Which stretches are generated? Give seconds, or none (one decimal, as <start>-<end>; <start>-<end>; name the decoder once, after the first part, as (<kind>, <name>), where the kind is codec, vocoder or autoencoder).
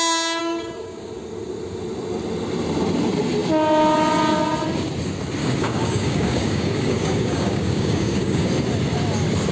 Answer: 0.4-1.1 (codec, DAC); 5.4-8.5